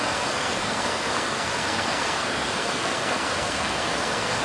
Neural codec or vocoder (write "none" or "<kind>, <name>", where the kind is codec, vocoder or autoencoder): codec, SNAC